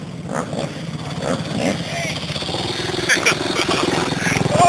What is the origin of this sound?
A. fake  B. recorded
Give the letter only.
B